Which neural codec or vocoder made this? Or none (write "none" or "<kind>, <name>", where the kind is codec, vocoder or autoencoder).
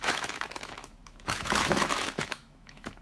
autoencoder, DAC-VAE